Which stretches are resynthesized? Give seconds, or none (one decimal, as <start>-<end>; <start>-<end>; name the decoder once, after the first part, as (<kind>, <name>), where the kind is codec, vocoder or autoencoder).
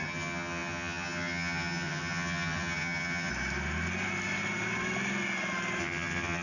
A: 0.0-3.3 (vocoder, HiFi-GAN); 5.8-6.4